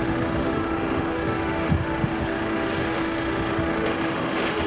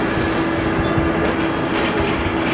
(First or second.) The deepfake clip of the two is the first